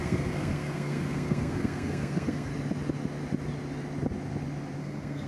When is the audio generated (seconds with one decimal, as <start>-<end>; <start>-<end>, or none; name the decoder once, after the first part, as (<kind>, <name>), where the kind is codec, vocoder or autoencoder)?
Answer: 0.0-2.5 (codec, SNAC); 4.8-5.3